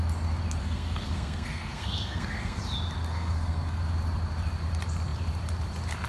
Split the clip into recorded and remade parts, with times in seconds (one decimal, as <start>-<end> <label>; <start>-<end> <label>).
0.0-0.6 recorded; 0.6-2.6 remade; 2.6-3.1 recorded; 3.1-3.8 remade; 3.8-6.1 recorded